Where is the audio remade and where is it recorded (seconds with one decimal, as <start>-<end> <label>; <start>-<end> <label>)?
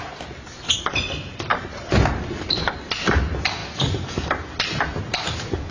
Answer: 0.0-5.7 recorded